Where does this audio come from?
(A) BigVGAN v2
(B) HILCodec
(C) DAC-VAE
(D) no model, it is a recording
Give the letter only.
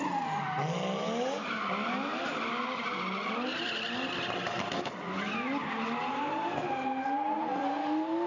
D